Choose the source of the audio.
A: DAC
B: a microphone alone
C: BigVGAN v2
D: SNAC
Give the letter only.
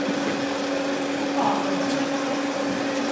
B